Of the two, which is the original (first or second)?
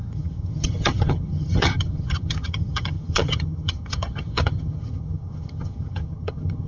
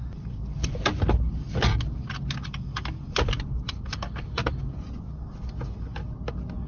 second